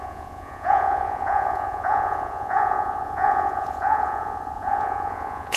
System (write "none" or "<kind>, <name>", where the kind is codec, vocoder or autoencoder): vocoder, Vocos